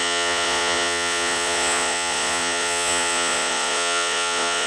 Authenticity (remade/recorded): remade